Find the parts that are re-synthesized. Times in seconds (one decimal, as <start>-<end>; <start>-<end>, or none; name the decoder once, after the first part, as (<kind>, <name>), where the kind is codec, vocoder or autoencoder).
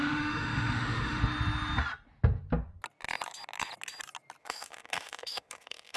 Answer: 0.0-1.2 (autoencoder, DAC-VAE); 4.4-6.0